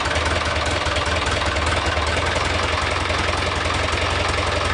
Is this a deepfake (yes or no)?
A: no